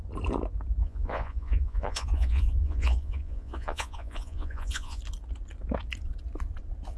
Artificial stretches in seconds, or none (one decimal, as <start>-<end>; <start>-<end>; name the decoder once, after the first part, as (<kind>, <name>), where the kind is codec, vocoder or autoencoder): 0.8-5.0 (vocoder, Vocos)